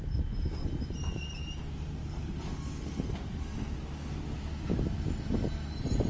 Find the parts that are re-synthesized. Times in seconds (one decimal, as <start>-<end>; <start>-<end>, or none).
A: 2.0-2.9